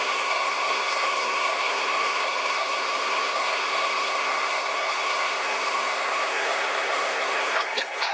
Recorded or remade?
remade